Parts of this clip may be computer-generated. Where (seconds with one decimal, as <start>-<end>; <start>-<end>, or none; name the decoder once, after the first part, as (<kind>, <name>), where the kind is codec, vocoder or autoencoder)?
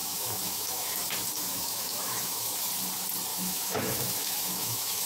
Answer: 0.0-1.0 (autoencoder, DAC-VAE); 1.5-2.7; 3.3-5.1